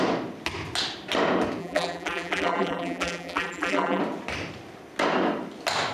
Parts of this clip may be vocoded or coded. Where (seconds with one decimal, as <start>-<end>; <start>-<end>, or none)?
1.6-4.0